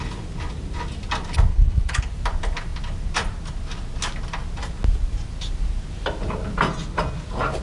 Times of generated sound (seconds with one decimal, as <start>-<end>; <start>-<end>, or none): 1.5-2.0